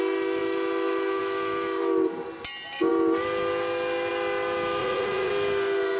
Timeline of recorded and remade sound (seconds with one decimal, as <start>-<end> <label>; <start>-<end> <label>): 0.0-4.8 recorded; 4.8-5.3 remade; 5.3-6.0 recorded